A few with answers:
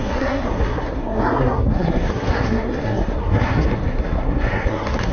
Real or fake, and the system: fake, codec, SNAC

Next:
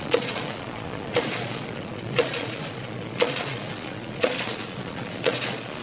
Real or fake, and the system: fake, vocoder, Vocos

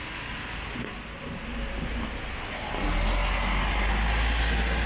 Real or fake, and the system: real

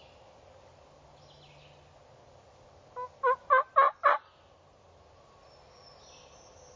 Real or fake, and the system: real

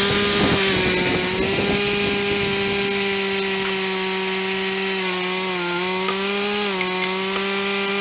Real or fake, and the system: real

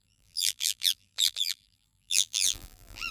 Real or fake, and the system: fake, vocoder, BigVGAN v2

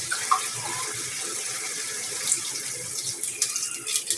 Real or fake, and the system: real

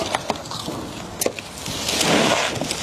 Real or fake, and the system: real